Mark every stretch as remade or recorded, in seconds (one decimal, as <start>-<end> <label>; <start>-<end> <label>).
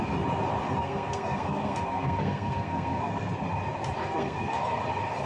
0.0-0.8 recorded; 0.8-3.3 remade; 3.3-4.0 recorded; 4.0-4.8 remade; 4.8-5.3 recorded